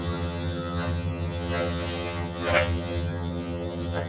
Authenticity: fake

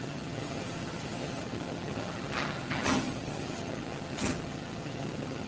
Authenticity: fake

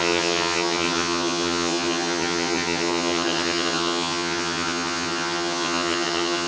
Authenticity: fake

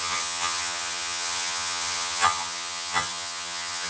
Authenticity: fake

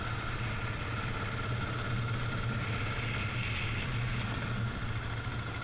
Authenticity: real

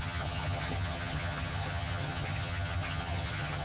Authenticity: fake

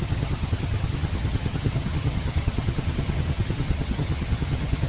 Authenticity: fake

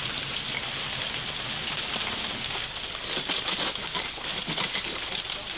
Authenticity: real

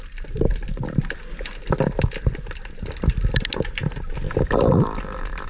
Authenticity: real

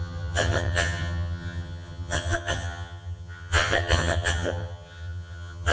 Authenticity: fake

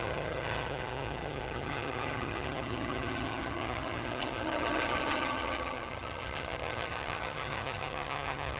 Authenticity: fake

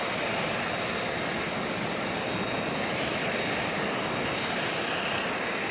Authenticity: real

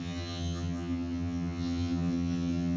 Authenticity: fake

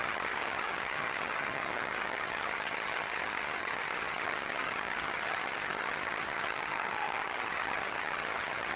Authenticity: fake